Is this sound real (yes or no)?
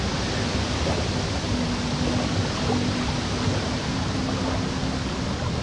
yes